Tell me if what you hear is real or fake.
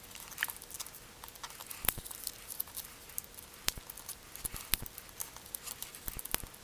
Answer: real